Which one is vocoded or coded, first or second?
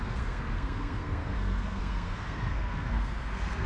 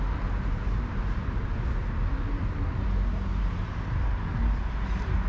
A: first